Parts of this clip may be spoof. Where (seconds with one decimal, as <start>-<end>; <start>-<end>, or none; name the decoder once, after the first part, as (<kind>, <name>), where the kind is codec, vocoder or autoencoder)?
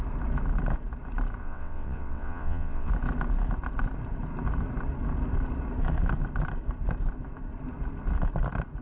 1.4-2.9 (vocoder, WaveNeXt)